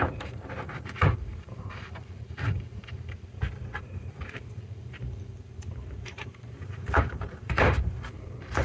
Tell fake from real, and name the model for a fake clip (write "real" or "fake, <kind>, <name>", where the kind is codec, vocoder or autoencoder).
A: fake, vocoder, BigVGAN v2